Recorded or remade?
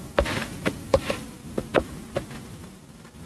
recorded